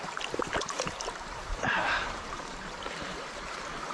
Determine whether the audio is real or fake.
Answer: fake